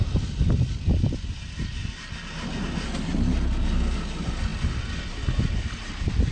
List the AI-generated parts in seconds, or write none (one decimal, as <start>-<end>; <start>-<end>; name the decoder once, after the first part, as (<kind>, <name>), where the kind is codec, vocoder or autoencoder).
none